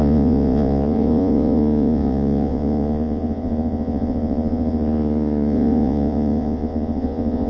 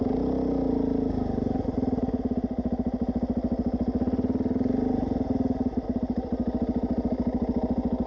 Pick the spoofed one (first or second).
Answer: first